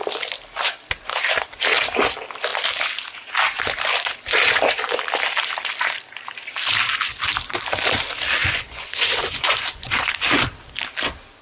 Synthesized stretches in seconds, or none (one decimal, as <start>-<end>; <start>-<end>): 8.4-10.1